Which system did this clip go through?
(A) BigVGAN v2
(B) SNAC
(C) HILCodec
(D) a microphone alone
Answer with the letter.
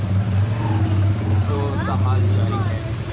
D